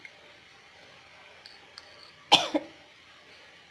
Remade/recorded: recorded